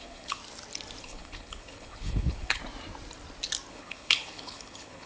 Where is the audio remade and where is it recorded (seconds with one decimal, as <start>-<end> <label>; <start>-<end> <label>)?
0.0-0.4 remade; 0.4-1.0 recorded; 1.0-2.6 remade; 2.6-3.7 recorded; 3.7-5.1 remade